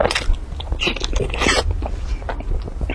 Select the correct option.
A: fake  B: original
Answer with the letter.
B